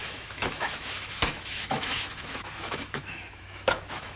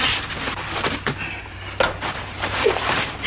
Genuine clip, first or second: second